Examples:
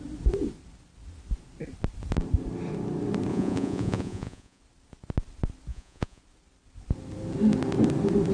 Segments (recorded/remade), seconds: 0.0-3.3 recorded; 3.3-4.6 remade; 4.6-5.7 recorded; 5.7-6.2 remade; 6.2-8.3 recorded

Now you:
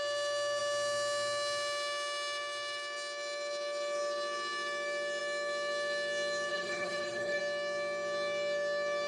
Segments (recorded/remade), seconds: 0.0-6.5 recorded; 6.5-7.4 remade; 7.4-9.1 recorded

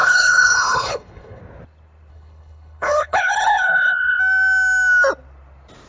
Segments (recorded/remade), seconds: 0.0-1.4 remade; 1.4-2.1 recorded; 2.1-4.2 remade; 4.2-5.9 recorded

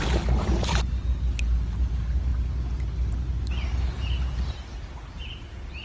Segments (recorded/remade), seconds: 0.0-5.8 recorded

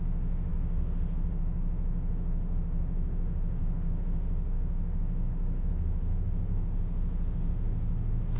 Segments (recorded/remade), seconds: 0.0-8.4 remade

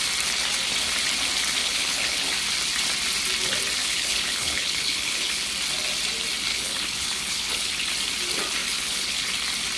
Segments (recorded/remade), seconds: 0.0-1.6 recorded; 1.6-2.3 remade; 2.3-3.8 recorded; 3.8-5.5 remade; 5.5-6.5 recorded; 6.5-7.7 remade; 7.7-8.6 recorded; 8.6-9.3 remade; 9.3-9.8 recorded

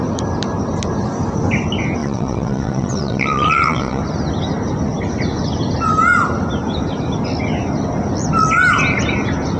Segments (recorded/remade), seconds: 0.0-2.0 recorded; 2.0-4.0 remade; 4.0-9.6 recorded